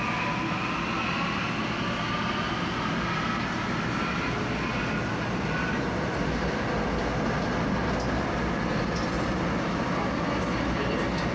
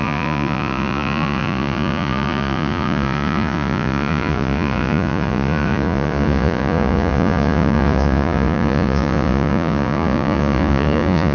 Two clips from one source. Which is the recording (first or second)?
first